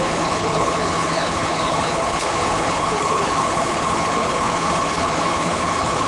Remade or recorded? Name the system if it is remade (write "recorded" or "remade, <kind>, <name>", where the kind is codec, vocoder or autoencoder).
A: remade, codec, HILCodec